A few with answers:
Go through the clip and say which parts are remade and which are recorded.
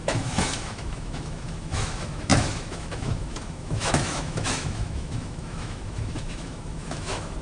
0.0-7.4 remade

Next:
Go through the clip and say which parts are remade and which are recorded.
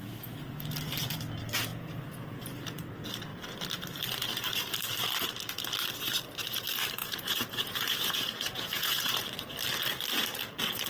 0.0-1.7 recorded; 1.7-2.4 remade; 2.4-7.0 recorded; 7.0-9.2 remade; 9.2-10.9 recorded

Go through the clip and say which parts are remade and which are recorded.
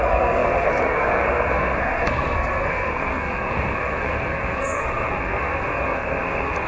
0.0-6.7 remade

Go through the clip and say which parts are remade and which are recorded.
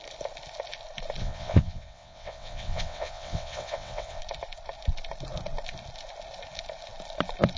0.0-1.2 recorded; 1.2-4.2 remade; 4.2-7.6 recorded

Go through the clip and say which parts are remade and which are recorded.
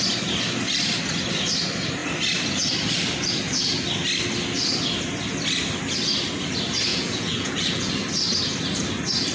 0.0-6.9 recorded; 6.9-7.9 remade; 7.9-9.3 recorded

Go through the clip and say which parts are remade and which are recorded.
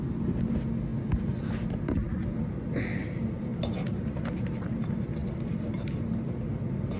0.0-7.0 recorded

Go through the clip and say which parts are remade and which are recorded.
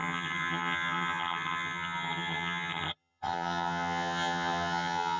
0.0-5.2 remade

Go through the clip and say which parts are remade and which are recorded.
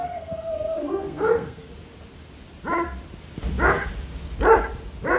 0.0-1.7 remade; 1.7-5.2 recorded